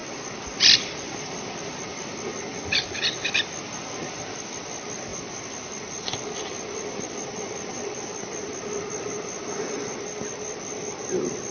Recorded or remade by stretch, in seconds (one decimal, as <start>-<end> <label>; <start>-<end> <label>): 0.0-11.5 recorded